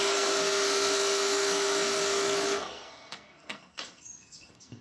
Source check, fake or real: fake